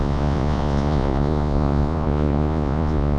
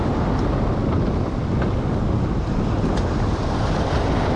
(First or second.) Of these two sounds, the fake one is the first